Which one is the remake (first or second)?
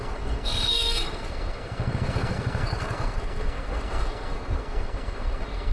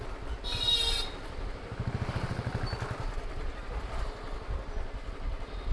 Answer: first